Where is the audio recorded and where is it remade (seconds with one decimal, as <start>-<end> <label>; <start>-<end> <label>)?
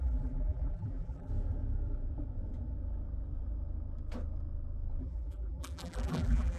0.0-1.3 remade; 1.3-5.0 recorded; 5.0-6.6 remade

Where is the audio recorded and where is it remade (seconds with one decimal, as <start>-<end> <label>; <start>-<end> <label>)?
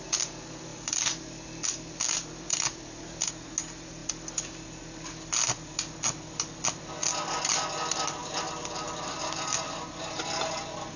0.0-0.7 recorded; 0.7-3.3 remade; 3.3-8.2 recorded; 8.2-10.0 remade; 10.0-11.0 recorded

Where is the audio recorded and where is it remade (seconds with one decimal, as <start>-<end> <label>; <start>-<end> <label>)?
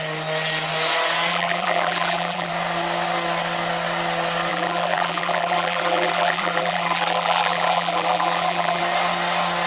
0.0-1.3 recorded; 1.3-2.5 remade; 2.5-4.5 recorded; 4.5-8.8 remade; 8.8-9.7 recorded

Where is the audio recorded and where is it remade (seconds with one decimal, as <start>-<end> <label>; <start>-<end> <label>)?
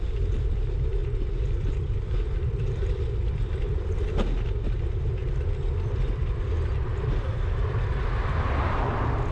0.0-1.0 recorded; 1.0-4.0 remade; 4.0-5.2 recorded; 5.2-6.6 remade; 6.6-9.3 recorded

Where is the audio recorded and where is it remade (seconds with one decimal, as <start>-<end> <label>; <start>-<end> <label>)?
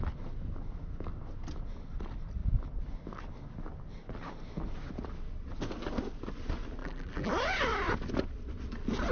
0.0-6.8 recorded; 6.8-7.3 remade; 7.3-9.1 recorded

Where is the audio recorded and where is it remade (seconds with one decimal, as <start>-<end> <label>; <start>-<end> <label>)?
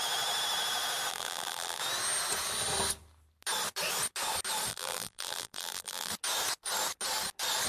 0.0-1.1 recorded; 1.1-1.8 remade; 1.8-4.7 recorded; 4.7-6.1 remade; 6.1-7.7 recorded